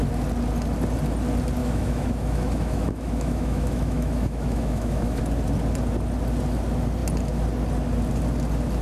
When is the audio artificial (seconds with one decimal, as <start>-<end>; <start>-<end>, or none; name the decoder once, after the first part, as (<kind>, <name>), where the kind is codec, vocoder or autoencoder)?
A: 1.6-5.2 (autoencoder, DAC-VAE)